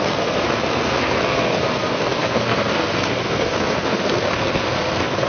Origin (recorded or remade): remade